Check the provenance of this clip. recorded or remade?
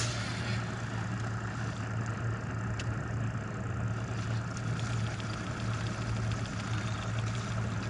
recorded